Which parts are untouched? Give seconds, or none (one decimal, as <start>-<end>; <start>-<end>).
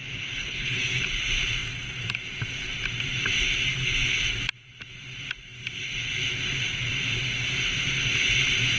0.0-0.4; 1.0-8.8